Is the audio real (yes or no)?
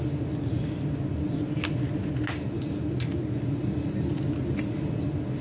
yes